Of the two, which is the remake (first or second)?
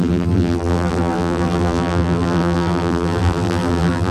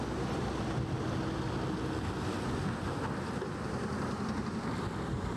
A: first